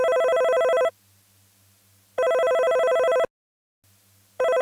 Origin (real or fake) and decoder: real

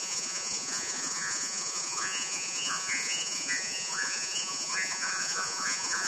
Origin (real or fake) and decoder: fake, vocoder, Vocos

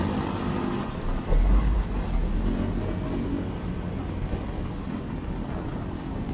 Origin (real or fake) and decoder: real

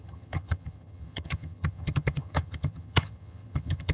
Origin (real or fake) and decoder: fake, vocoder, HiFi-GAN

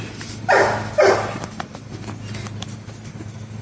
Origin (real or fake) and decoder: real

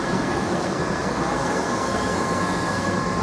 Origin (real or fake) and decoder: fake, codec, SNAC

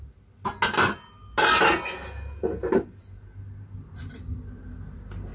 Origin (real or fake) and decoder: real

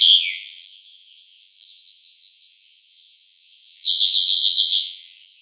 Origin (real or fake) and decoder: fake, vocoder, BigVGAN v2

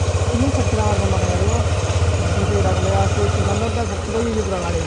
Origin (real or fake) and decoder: real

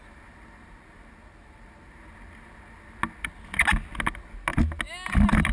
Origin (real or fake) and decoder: real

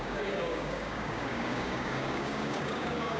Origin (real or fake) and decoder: fake, codec, DAC